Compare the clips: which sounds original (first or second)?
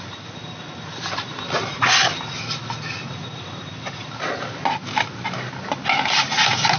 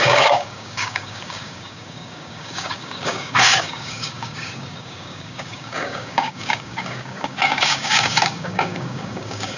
first